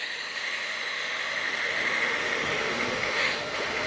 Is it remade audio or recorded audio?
remade